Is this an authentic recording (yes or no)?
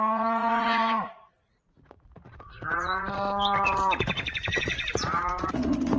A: no